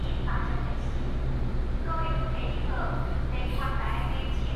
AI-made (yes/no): no